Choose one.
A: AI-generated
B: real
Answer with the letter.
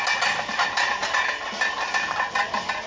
B